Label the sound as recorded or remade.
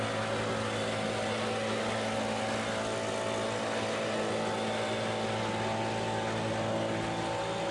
recorded